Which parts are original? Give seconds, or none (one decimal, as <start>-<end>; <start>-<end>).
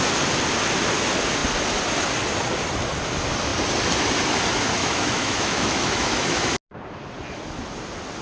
0.0-4.8; 6.4-8.2